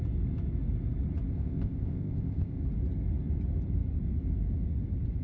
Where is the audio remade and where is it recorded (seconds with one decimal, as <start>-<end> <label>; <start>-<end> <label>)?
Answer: 0.0-1.3 recorded; 1.3-2.6 remade; 2.6-5.2 recorded